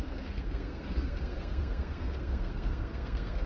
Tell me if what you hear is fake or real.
fake